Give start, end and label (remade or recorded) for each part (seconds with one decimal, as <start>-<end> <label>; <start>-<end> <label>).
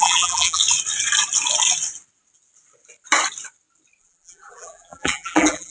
0.0-0.6 remade; 0.6-4.0 recorded; 4.0-5.7 remade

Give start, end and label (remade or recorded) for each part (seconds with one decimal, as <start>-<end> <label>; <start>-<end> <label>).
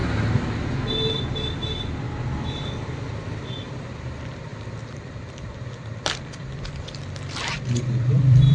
0.0-3.7 recorded; 3.7-8.5 remade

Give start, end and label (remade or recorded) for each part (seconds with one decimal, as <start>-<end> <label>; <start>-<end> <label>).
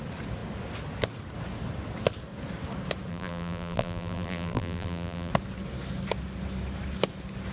0.0-3.1 recorded; 3.1-5.3 remade; 5.3-7.5 recorded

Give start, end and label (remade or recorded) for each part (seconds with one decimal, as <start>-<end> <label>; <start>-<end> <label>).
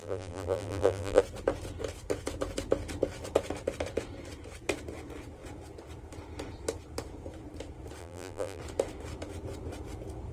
0.0-1.2 remade; 1.2-8.0 recorded; 8.0-8.6 remade; 8.6-10.3 recorded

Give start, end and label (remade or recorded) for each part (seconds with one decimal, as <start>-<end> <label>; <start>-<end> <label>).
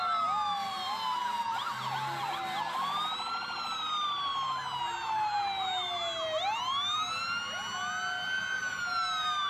0.0-9.5 recorded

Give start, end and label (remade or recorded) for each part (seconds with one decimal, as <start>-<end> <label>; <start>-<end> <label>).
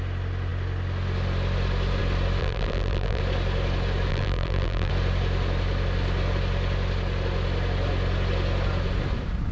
0.0-2.4 recorded; 2.4-3.2 remade; 3.2-4.1 recorded; 4.1-4.9 remade; 4.9-9.5 recorded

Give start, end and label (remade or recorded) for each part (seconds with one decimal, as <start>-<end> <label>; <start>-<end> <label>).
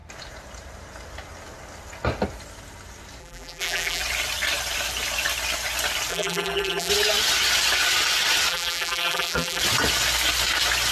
0.0-3.2 recorded; 3.2-4.0 remade; 4.0-6.1 recorded; 6.1-6.9 remade; 6.9-8.5 recorded; 8.5-9.6 remade; 9.6-10.9 recorded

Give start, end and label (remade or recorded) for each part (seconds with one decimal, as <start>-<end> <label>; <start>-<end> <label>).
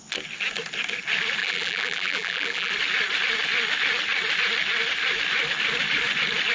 0.0-1.4 recorded; 1.4-2.7 remade; 2.7-6.5 recorded